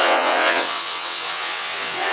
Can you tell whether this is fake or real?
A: fake